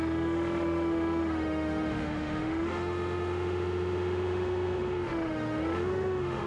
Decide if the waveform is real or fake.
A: fake